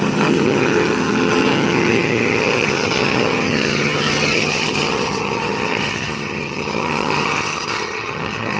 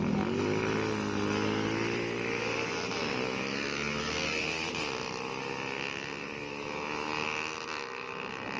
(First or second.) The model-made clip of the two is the first